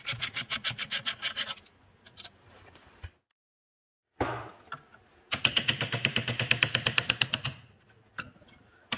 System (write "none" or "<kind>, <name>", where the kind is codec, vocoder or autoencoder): none